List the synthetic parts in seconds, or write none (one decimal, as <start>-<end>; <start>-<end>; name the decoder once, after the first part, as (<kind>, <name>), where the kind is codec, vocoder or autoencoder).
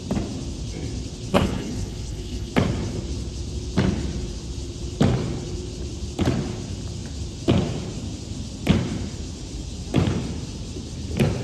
1.3-2.5 (codec, HILCodec)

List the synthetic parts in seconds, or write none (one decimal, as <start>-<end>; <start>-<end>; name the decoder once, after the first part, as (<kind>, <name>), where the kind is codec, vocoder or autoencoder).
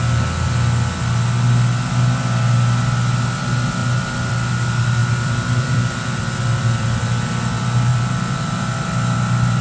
3.8-4.5 (vocoder, BigVGAN v2); 5.0-6.6; 7.9-8.7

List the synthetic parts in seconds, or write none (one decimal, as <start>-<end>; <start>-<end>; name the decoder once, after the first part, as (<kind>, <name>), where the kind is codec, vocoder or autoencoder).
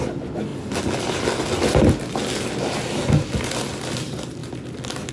none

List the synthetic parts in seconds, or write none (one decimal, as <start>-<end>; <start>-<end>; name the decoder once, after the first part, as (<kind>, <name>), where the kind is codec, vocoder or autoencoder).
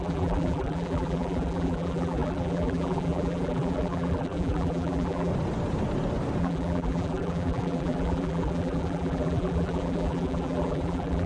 0.0-5.3 (vocoder, BigVGAN v2); 6.4-11.3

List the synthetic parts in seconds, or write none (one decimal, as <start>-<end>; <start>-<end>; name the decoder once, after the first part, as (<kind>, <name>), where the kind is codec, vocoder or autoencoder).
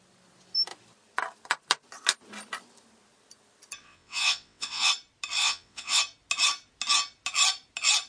3.8-4.9 (vocoder, WaveNeXt); 5.4-6.0